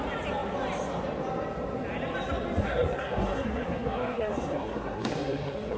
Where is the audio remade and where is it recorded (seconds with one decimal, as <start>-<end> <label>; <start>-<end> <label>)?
0.0-2.6 recorded; 2.6-5.8 remade